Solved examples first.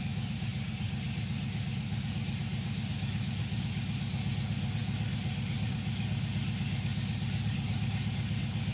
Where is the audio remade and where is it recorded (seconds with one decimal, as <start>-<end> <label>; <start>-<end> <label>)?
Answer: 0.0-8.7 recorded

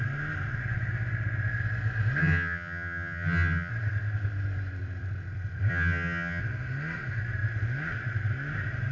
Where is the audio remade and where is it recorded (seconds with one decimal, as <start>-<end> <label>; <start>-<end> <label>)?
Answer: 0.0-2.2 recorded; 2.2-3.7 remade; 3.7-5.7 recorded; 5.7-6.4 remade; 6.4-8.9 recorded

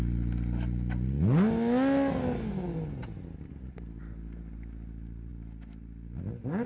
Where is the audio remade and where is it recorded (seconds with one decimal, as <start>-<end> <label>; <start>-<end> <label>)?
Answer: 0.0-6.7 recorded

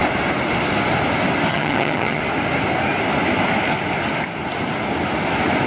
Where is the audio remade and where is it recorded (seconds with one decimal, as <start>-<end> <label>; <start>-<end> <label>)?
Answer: 0.0-1.5 recorded; 1.5-2.2 remade; 2.2-5.7 recorded

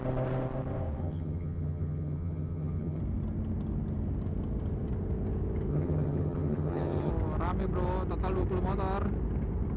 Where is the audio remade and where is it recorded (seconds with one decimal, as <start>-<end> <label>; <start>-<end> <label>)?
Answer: 0.0-1.0 recorded; 1.0-3.0 remade; 3.0-5.7 recorded; 5.7-7.1 remade; 7.1-9.8 recorded